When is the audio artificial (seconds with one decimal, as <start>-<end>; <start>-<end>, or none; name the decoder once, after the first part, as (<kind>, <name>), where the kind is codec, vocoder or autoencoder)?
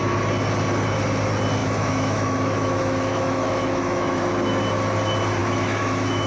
1.6-4.2 (autoencoder, DAC-VAE); 5.4-6.3